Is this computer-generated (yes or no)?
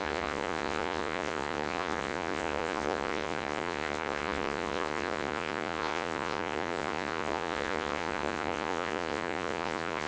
yes